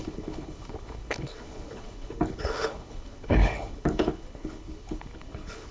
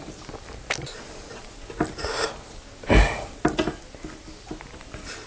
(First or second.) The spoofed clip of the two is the first